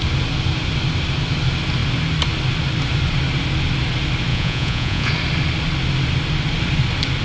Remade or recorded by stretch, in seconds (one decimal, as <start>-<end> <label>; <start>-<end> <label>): 0.0-4.3 recorded; 4.3-5.1 remade; 5.1-7.2 recorded